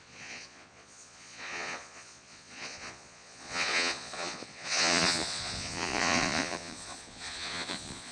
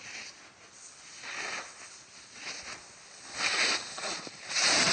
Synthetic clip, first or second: first